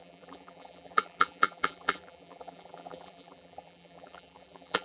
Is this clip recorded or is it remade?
remade